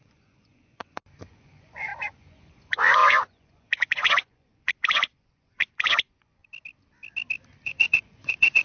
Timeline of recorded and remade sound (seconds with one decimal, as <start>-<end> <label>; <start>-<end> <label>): 0.0-6.4 remade; 6.4-7.6 recorded; 7.6-8.6 remade